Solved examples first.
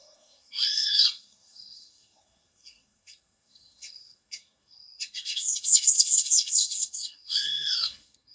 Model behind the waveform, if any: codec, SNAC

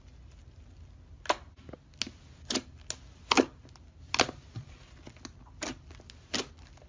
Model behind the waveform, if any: none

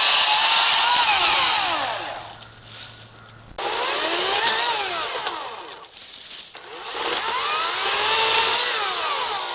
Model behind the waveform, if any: none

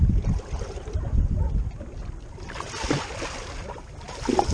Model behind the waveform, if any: none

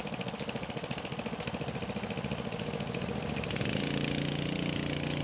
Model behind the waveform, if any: none